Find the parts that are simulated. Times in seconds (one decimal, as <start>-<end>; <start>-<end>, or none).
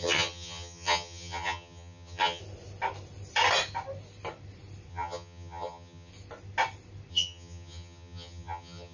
0.0-2.4; 4.9-6.1; 7.1-8.9